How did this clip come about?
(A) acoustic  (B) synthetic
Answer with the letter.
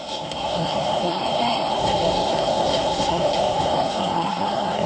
B